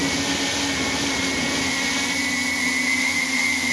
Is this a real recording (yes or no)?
yes